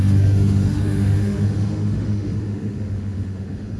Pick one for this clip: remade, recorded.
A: remade